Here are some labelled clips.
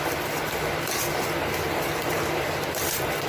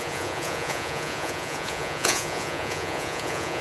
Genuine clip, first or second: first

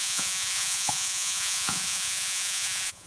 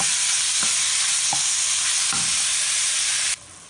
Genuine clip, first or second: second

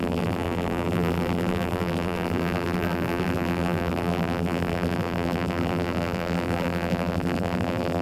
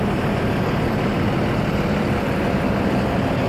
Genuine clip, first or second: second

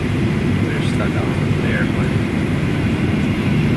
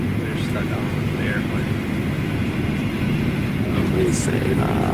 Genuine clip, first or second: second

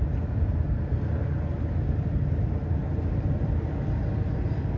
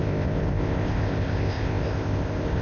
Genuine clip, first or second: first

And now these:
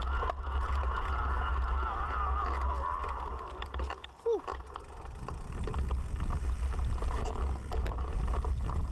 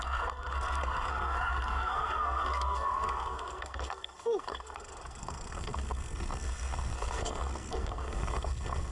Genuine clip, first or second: first